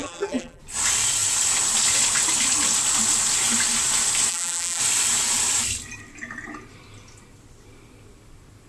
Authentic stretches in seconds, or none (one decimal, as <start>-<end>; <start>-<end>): 0.6-4.3; 4.8-8.7